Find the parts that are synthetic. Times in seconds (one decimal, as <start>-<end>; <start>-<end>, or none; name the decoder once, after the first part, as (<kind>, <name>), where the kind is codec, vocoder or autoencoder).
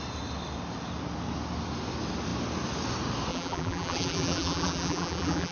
3.3-5.5 (vocoder, BigVGAN v2)